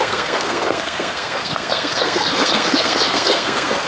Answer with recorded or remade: remade